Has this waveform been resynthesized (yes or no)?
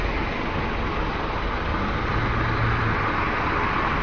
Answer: no